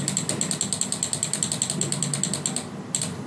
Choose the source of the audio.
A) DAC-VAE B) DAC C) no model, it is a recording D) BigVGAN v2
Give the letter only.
C